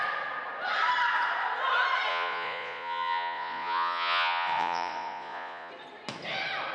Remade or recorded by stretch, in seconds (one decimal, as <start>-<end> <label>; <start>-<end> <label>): 0.0-2.1 recorded; 2.1-5.7 remade; 5.7-6.7 recorded

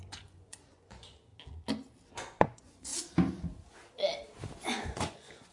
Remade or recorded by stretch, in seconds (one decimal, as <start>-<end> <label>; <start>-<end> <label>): 0.0-1.3 remade; 1.3-2.1 recorded; 2.1-2.9 remade; 2.9-4.6 recorded; 4.6-5.5 remade

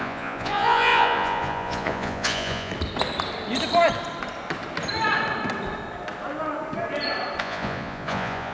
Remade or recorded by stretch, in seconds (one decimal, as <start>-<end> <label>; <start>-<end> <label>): 0.0-2.7 remade; 2.7-7.4 recorded; 7.4-8.5 remade

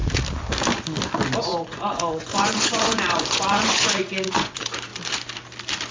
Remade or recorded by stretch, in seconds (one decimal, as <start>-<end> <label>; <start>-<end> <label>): 0.0-1.4 recorded; 1.4-4.9 remade; 4.9-5.9 recorded